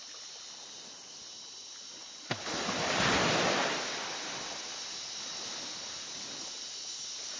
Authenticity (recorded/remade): recorded